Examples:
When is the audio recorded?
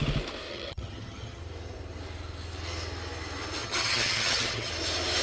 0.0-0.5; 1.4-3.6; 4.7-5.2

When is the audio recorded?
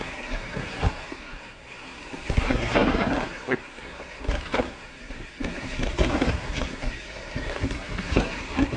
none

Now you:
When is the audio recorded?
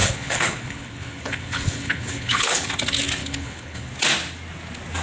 2.7-3.2; 3.9-5.0